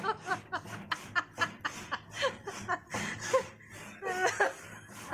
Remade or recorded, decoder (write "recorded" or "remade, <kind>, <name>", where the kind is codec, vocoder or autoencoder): recorded